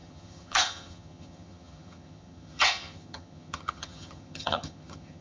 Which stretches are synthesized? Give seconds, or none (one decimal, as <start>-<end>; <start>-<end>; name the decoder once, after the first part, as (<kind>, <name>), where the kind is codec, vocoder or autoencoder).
0.0-5.2 (vocoder, HiFi-GAN)